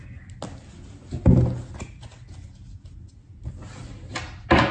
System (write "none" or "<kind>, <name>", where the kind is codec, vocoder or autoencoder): none